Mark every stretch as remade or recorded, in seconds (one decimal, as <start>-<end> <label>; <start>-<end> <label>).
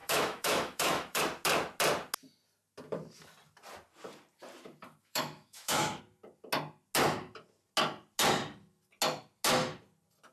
0.0-1.2 remade; 1.2-5.0 recorded; 5.0-6.0 remade; 6.0-10.3 recorded